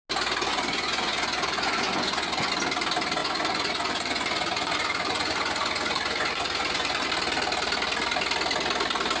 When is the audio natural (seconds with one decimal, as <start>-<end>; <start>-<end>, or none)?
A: 0.0-0.5; 2.5-3.2; 7.1-9.2